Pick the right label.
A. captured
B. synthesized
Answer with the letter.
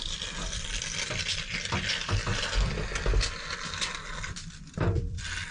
B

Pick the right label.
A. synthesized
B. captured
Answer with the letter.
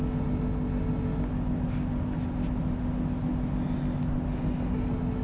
B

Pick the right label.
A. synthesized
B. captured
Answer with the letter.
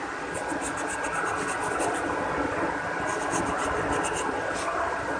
B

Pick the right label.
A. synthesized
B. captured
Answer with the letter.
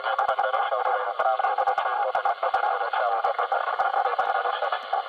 B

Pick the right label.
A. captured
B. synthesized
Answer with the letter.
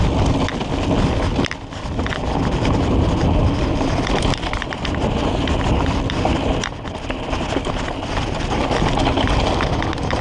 A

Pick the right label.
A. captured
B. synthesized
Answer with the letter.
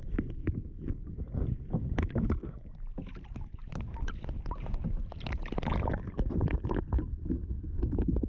A